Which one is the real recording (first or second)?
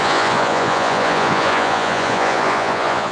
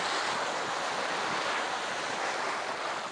second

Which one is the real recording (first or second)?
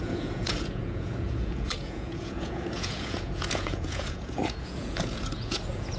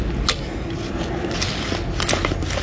second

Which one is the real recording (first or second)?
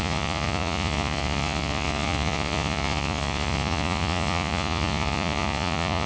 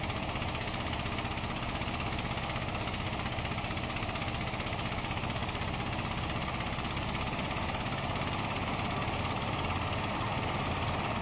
second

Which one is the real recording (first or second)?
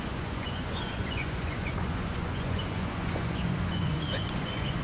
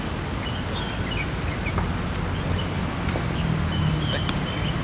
second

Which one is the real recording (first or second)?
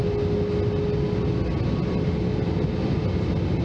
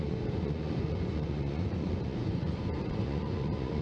first